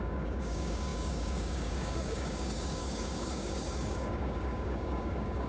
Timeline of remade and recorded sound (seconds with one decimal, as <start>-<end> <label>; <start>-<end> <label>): 0.0-5.5 remade